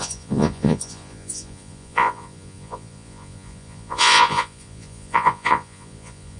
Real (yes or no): no